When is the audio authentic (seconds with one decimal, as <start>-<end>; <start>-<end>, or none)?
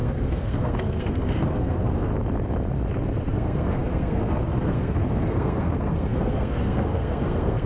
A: 2.1-3.3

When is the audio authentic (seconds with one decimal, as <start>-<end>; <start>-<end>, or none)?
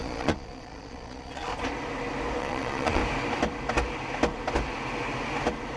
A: 1.5-2.4; 3.0-5.8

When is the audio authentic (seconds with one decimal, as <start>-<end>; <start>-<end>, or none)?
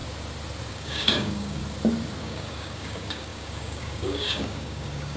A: 0.0-0.7; 1.6-2.2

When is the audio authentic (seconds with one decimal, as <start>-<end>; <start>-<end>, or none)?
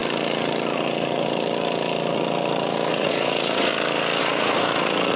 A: 0.0-2.9; 3.7-4.2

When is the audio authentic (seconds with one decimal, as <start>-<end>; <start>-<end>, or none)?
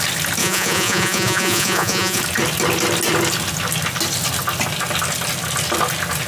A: 0.0-0.4; 2.2-6.3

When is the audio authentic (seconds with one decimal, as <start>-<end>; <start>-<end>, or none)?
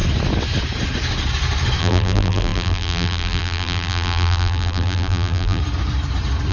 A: 0.0-1.8; 5.6-6.5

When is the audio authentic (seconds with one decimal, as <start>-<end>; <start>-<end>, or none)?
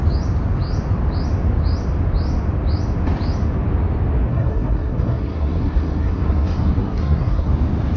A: 0.0-4.3; 7.5-8.0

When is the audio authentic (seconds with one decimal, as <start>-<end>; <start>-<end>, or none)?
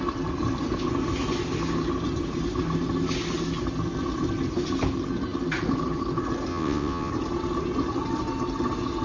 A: 0.0-6.5; 7.1-9.0